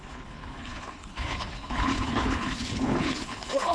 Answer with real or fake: fake